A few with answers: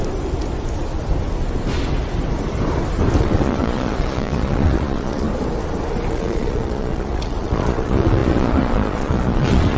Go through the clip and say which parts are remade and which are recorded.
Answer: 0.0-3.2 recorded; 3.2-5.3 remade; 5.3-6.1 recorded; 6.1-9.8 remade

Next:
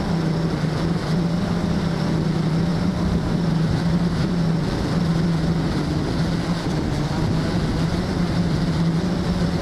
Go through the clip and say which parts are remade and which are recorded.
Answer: 0.0-2.7 recorded; 2.7-4.6 remade; 4.6-9.6 recorded

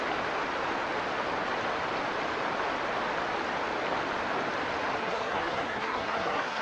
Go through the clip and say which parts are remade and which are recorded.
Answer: 0.0-5.0 recorded; 5.0-6.6 remade

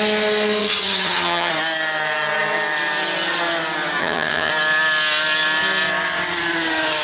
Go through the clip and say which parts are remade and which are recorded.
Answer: 0.0-0.6 recorded; 0.6-1.5 remade; 1.5-4.0 recorded; 4.0-4.5 remade; 4.5-7.0 recorded

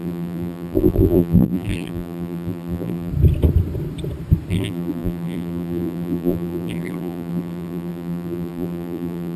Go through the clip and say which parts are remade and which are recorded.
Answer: 0.0-3.1 remade; 3.1-4.5 recorded; 4.5-9.4 remade

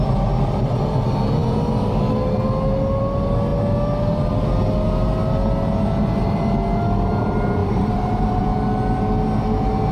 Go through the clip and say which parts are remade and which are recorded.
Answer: 0.0-7.6 recorded; 7.6-8.4 remade; 8.4-9.9 recorded

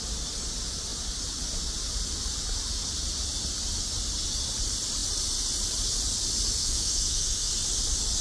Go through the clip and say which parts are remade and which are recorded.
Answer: 0.0-6.6 recorded; 6.6-7.5 remade; 7.5-8.2 recorded

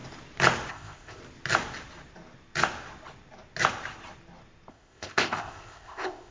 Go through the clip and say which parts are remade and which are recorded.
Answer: 0.0-0.7 recorded; 0.7-1.2 remade; 1.2-4.7 recorded; 4.7-6.3 remade